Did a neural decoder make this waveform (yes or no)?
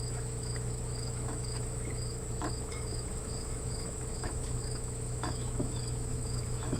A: yes